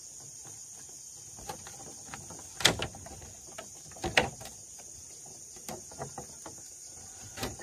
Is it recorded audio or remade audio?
recorded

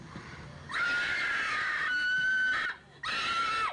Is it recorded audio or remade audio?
recorded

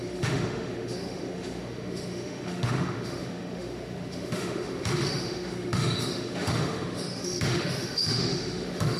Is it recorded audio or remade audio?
remade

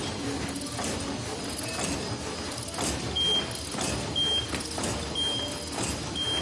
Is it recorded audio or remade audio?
recorded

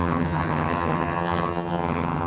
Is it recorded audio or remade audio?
remade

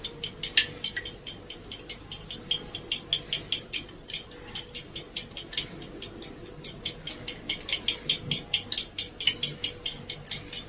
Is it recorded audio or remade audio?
recorded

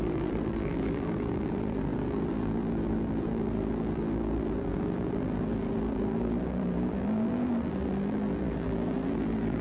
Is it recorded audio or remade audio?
remade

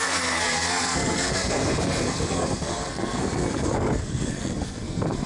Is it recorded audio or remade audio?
remade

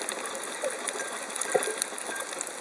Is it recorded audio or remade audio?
recorded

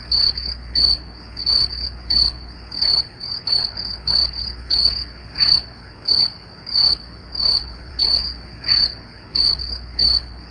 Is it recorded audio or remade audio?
remade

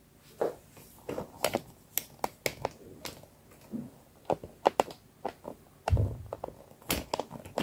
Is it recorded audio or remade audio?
recorded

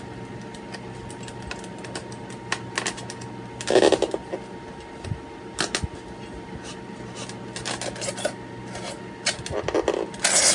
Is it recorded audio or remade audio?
recorded